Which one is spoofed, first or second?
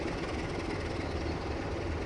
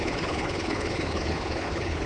second